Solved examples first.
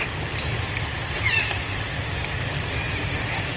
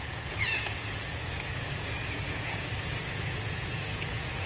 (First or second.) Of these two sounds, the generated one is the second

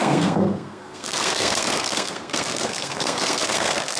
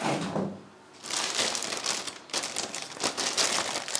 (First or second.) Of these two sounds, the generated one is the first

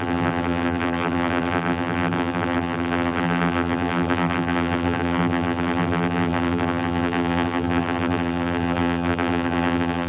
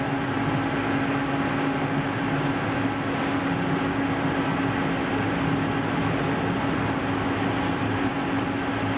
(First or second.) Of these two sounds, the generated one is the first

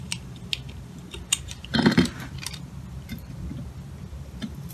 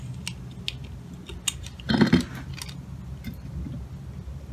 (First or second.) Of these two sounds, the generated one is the first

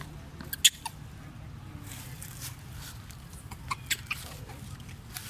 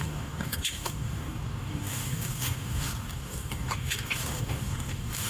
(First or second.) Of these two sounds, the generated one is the second